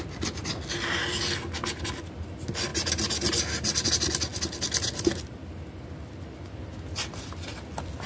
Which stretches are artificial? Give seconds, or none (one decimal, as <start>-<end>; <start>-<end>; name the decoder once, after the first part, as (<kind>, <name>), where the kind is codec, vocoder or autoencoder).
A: none